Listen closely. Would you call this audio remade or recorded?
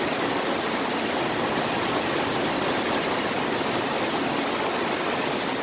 recorded